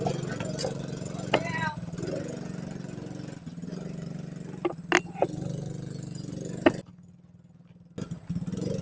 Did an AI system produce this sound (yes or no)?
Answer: no